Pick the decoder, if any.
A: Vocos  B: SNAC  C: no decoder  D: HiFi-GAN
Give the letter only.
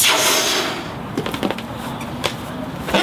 C